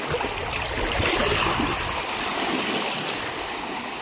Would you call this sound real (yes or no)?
yes